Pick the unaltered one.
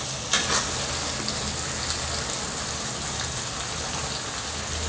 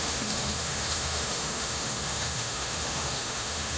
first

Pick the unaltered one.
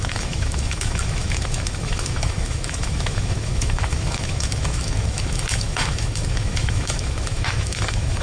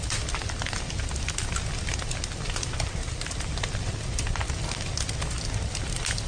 second